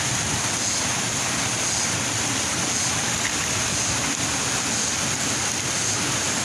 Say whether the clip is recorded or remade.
recorded